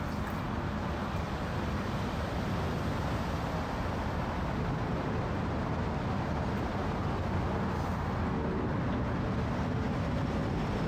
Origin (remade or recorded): recorded